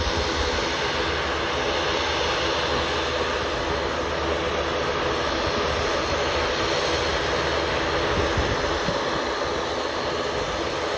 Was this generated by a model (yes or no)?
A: no